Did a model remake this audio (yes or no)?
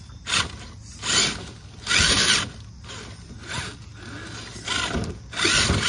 no